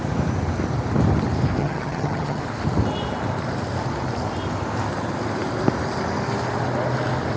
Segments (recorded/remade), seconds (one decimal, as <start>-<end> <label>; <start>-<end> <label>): 0.0-1.6 recorded; 1.6-2.4 remade; 2.4-7.4 recorded